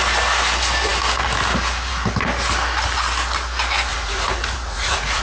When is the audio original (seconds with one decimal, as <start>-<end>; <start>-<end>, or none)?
0.0-3.9